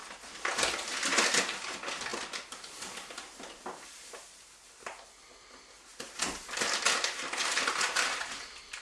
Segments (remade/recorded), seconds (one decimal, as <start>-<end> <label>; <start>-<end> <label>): 0.0-8.8 recorded